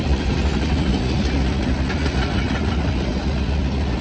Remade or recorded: remade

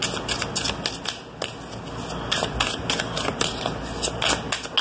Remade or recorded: recorded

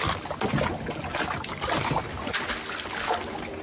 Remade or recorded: recorded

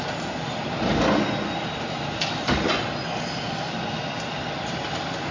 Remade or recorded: recorded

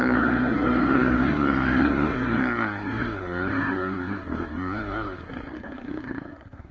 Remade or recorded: remade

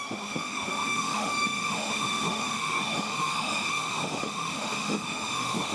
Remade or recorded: remade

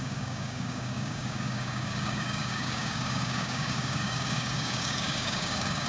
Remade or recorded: remade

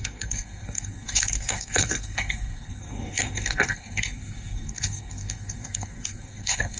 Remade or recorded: remade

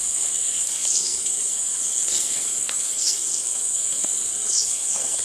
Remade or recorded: remade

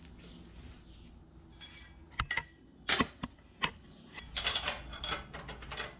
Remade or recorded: recorded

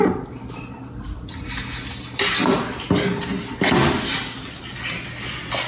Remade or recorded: recorded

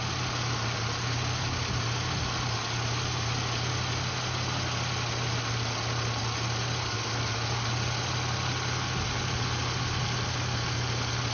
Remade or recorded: recorded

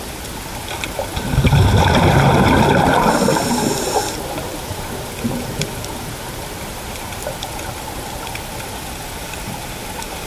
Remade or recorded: recorded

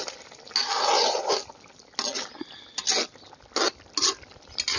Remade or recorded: recorded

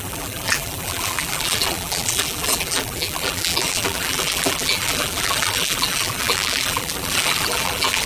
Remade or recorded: remade